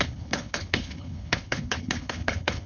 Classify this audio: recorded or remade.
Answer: remade